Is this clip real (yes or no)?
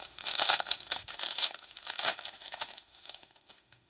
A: no